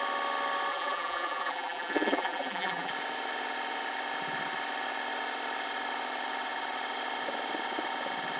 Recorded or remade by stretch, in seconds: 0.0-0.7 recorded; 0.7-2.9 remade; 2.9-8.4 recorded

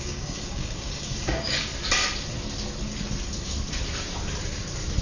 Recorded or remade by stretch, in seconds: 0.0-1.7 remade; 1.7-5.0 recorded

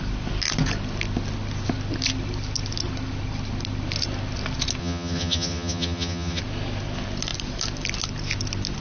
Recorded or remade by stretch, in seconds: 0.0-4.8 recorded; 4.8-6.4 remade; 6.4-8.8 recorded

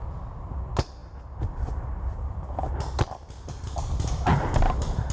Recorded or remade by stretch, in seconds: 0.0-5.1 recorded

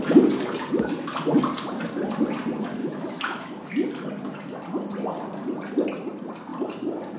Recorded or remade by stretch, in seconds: 0.0-2.8 recorded; 2.8-3.4 remade; 3.4-7.2 recorded